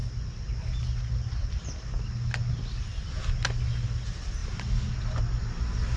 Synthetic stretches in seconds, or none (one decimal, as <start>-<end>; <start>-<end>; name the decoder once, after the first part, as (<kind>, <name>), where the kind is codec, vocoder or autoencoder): none